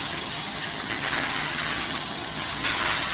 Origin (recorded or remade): remade